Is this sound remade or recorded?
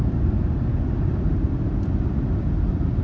recorded